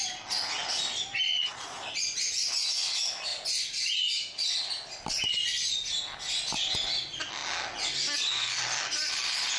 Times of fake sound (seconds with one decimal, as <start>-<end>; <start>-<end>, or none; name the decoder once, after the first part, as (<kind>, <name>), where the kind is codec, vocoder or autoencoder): 1.3-2.0 (vocoder, Vocos)